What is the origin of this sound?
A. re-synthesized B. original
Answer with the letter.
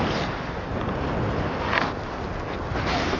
B